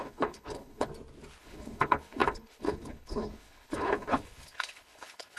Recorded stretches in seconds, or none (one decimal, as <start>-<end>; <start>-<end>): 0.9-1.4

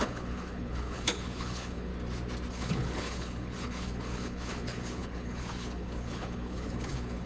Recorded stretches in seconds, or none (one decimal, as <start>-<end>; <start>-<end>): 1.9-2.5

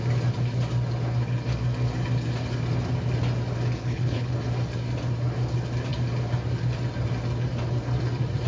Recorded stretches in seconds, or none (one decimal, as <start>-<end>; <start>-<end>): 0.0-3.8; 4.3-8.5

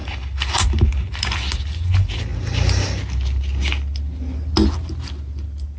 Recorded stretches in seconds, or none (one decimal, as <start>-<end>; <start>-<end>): 0.0-5.8